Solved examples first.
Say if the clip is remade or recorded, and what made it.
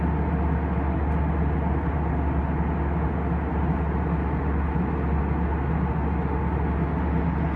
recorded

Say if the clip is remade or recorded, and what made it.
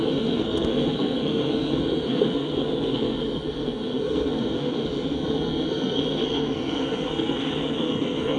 remade, codec, SNAC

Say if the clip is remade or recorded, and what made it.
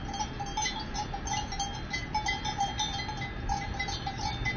recorded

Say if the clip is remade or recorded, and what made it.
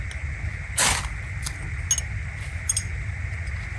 recorded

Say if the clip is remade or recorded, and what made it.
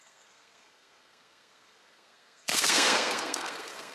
remade, codec, SNAC